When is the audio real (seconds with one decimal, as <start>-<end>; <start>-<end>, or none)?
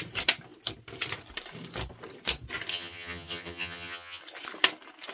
0.0-2.7; 4.2-5.1